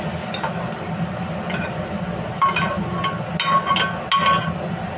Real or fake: real